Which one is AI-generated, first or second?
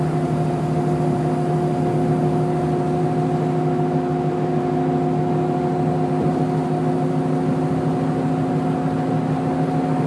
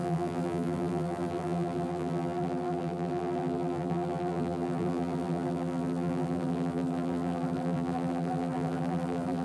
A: second